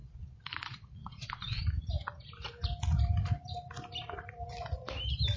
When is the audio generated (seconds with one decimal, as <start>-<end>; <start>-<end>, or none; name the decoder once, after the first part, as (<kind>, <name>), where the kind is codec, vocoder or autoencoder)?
0.0-1.6 (vocoder, Vocos)